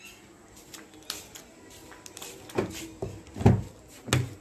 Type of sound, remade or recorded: recorded